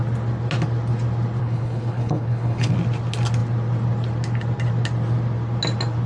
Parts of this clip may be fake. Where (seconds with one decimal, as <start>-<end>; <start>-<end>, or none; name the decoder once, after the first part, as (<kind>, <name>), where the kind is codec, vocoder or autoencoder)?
1.4-2.7 (codec, HILCodec)